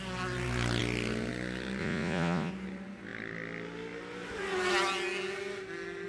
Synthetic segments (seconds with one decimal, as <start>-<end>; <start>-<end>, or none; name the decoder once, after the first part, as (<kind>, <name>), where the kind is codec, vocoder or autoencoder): 1.8-2.5 (vocoder, Vocos)